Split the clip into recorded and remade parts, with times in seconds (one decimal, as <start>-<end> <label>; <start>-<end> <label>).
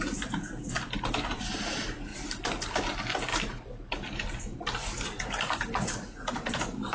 0.0-6.9 recorded